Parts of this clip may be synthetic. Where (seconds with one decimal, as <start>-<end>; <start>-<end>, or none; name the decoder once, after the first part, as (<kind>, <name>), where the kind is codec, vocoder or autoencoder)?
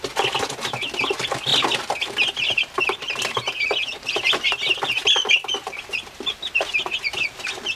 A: none